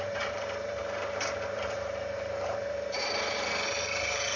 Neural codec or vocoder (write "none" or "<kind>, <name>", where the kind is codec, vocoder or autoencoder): vocoder, BigVGAN v2